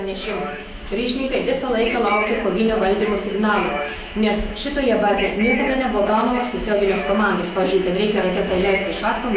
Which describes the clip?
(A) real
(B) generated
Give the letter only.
B